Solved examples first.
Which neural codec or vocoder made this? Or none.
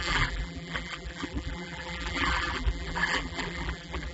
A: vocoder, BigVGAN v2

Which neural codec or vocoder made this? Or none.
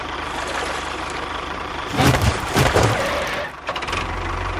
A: vocoder, BigVGAN v2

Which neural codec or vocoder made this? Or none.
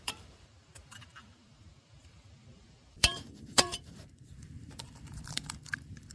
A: vocoder, BigVGAN v2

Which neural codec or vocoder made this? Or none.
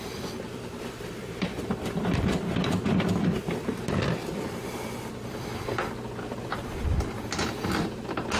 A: vocoder, BigVGAN v2